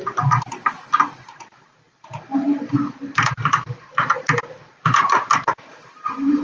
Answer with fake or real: real